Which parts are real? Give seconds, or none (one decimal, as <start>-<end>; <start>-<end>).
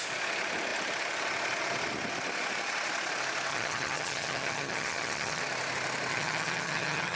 0.0-3.5; 5.4-6.1